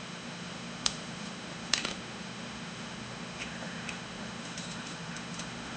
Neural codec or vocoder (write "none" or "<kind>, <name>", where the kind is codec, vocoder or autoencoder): autoencoder, DAC-VAE